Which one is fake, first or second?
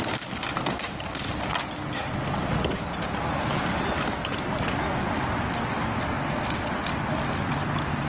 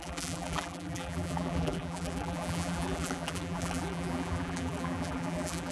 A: second